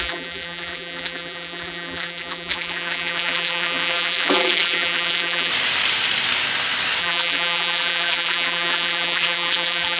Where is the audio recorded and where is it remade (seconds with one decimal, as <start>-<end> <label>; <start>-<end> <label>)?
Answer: 0.0-5.5 remade; 5.5-7.0 recorded; 7.0-10.0 remade